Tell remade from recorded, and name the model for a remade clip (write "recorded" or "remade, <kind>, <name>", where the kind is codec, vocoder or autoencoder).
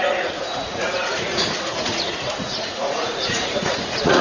remade, vocoder, Vocos